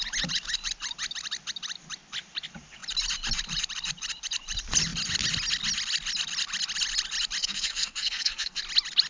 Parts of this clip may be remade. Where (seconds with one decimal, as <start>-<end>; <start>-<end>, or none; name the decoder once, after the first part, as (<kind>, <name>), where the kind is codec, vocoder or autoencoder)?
7.4-8.6 (codec, SNAC)